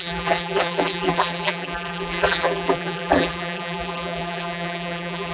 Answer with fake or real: fake